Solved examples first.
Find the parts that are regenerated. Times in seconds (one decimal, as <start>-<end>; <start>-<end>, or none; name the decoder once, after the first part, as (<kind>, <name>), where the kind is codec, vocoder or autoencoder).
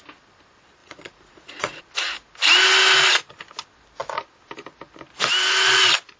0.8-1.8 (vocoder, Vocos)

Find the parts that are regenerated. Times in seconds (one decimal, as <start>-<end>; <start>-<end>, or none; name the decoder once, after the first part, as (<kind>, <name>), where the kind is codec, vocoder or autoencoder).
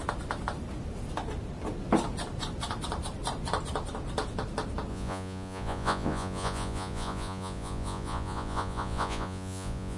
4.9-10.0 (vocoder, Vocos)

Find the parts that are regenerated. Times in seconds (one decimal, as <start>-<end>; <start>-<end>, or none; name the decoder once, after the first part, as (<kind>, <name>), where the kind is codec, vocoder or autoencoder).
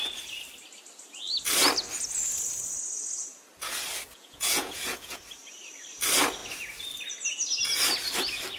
4.1-5.2 (vocoder, Vocos)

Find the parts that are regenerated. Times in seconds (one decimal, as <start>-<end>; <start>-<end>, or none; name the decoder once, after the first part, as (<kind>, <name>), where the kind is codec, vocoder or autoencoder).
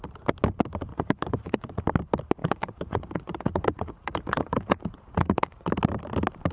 0.9-1.8 (vocoder, Vocos); 2.4-5.7